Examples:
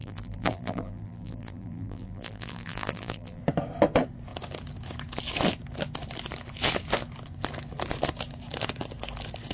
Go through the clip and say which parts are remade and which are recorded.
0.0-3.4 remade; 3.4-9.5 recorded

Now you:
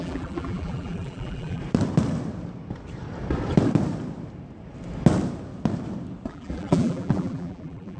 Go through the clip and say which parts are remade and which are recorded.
0.0-1.6 remade; 1.6-6.3 recorded; 6.3-8.0 remade